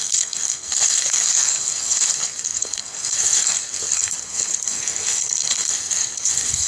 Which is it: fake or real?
fake